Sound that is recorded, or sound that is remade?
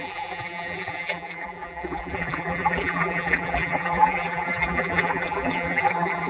remade